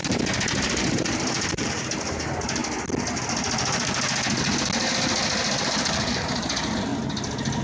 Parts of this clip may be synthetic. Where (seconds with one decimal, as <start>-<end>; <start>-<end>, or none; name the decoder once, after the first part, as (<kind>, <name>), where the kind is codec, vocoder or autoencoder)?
0.0-2.6 (vocoder, BigVGAN v2); 5.6-6.9